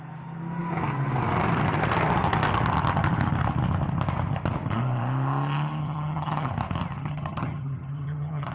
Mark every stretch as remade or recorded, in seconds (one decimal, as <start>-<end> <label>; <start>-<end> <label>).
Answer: 0.0-5.8 recorded; 5.8-6.5 remade; 6.5-7.0 recorded; 7.0-8.5 remade